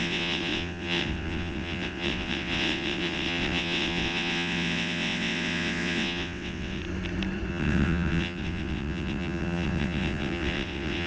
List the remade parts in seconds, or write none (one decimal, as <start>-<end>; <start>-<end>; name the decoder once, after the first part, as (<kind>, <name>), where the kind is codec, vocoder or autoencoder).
0.0-6.8 (vocoder, WaveNeXt); 7.5-11.1